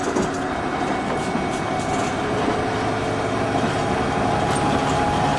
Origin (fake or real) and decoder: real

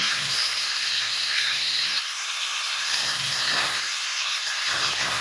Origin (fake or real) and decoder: fake, codec, SNAC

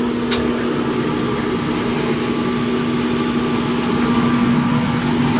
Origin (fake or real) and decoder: real